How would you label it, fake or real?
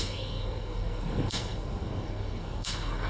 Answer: fake